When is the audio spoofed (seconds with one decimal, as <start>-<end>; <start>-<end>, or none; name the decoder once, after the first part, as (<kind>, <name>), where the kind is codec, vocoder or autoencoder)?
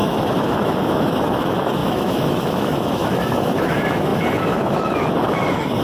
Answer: 0.0-5.8 (autoencoder, DAC-VAE)